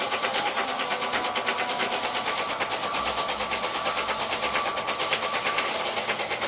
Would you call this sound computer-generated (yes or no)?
no